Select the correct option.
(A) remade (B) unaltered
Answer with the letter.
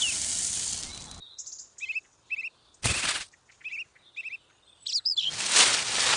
B